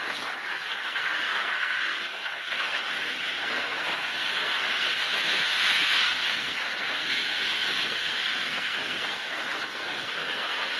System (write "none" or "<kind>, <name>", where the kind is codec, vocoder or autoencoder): codec, SNAC